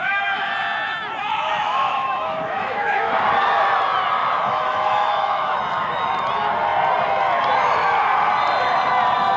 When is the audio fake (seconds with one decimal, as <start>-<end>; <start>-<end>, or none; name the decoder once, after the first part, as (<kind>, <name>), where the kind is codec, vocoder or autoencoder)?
0.0-0.5 (autoencoder, DAC-VAE); 1.6-3.1; 4.2-5.6